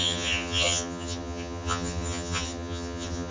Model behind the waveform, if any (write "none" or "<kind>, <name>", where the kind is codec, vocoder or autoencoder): vocoder, HiFi-GAN